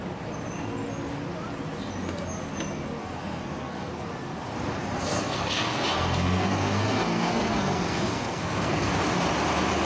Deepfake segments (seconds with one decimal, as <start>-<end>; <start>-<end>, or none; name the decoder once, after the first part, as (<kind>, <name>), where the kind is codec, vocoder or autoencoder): 3.0-3.9 (codec, SNAC); 4.8-9.0